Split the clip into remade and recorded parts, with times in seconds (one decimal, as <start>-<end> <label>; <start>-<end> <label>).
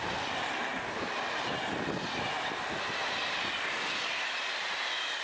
0.0-5.2 recorded